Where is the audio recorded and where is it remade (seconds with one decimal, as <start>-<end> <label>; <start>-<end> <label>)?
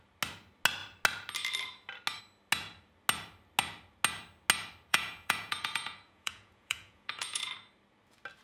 0.0-4.9 recorded; 4.9-7.5 remade; 7.5-8.4 recorded